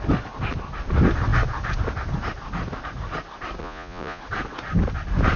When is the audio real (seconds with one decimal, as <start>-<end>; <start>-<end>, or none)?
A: 0.0-3.6; 4.2-5.4